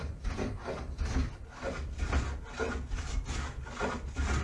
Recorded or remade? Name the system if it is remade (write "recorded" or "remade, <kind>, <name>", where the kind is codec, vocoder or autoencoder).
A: recorded